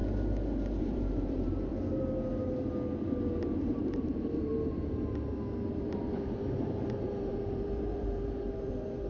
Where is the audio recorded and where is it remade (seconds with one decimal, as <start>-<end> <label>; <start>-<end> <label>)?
0.0-0.8 recorded; 0.8-1.7 remade; 1.7-3.6 recorded; 3.6-4.5 remade; 4.5-5.7 recorded; 5.7-9.1 remade